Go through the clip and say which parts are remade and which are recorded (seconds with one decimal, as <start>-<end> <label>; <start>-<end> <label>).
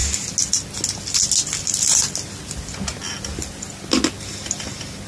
0.0-5.1 recorded